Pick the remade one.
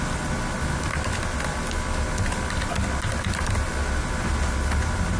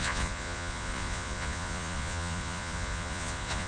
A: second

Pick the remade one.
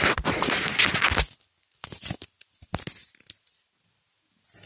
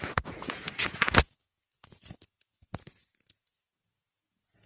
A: second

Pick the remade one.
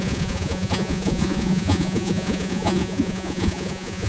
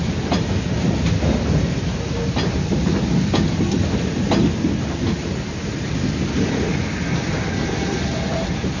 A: first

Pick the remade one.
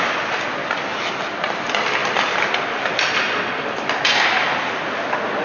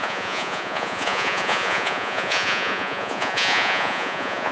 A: second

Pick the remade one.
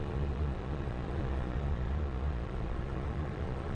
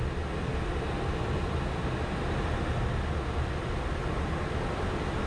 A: first